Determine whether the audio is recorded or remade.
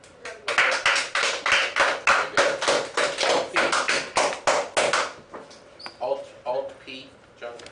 recorded